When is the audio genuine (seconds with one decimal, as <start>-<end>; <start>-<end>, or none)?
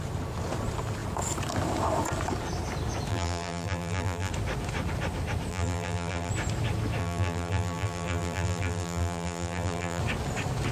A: 0.0-3.1; 4.3-5.5; 6.3-7.0; 10.0-10.7